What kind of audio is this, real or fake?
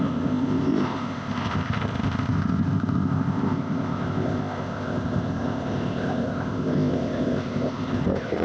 fake